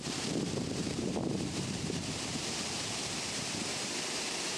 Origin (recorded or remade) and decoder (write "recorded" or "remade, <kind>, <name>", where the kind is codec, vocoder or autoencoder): remade, vocoder, BigVGAN v2